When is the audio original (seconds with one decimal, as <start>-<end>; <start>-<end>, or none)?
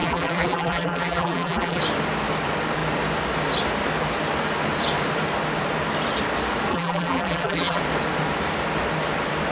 1.8-6.7; 7.8-9.5